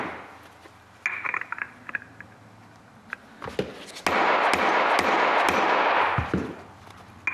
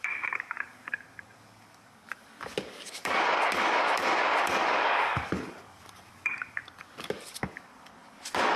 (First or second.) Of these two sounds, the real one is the first